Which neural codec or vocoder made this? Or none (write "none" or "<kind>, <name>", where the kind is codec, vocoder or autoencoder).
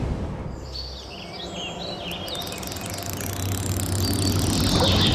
none